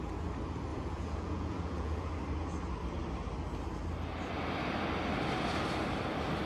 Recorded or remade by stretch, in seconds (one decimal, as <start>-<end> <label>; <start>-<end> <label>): 0.0-0.7 recorded; 0.7-2.1 remade; 2.1-6.5 recorded